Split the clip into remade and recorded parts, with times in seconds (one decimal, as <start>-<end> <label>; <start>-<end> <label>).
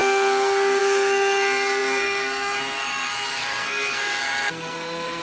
0.0-5.2 remade